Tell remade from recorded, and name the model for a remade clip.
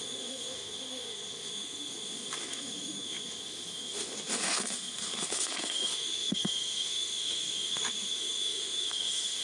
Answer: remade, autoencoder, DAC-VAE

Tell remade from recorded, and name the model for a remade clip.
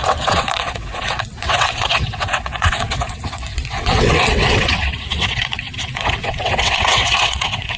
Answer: remade, vocoder, WaveNeXt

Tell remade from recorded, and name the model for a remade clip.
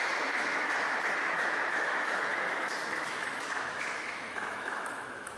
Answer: remade, autoencoder, DAC-VAE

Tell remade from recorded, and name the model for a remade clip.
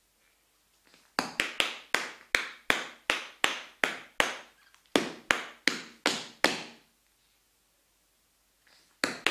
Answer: recorded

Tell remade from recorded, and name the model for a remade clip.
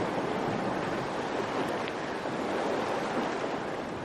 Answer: recorded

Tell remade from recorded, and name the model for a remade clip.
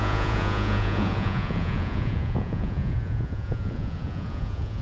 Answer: remade, vocoder, Vocos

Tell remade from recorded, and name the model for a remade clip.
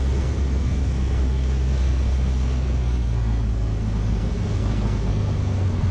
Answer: remade, codec, SNAC